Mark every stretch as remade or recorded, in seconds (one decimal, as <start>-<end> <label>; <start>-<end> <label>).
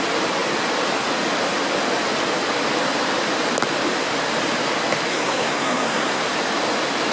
0.0-5.1 recorded; 5.1-6.2 remade; 6.2-7.1 recorded